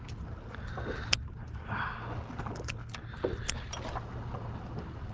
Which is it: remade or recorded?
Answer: recorded